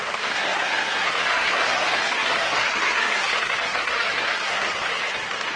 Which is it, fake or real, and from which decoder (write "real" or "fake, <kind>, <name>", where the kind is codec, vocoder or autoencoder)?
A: fake, codec, SNAC